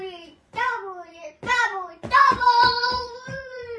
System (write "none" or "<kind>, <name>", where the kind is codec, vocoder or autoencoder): vocoder, Vocos